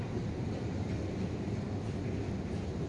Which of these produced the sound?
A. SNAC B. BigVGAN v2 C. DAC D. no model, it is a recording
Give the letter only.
D